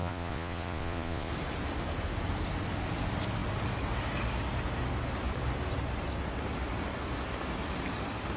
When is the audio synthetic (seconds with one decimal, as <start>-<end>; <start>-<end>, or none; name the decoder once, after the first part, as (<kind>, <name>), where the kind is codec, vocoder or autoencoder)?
0.0-1.3 (vocoder, Vocos)